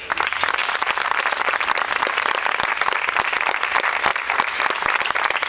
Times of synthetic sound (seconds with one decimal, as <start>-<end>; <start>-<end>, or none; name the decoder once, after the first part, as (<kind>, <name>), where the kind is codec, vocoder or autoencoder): 0.0-4.1 (vocoder, BigVGAN v2); 4.6-5.5